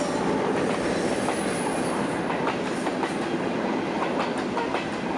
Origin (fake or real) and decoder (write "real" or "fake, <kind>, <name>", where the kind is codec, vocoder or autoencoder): real